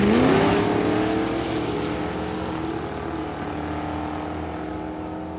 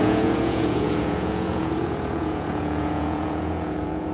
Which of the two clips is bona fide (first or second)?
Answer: first